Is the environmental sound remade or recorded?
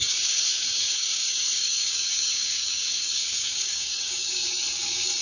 remade